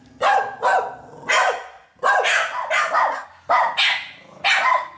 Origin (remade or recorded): recorded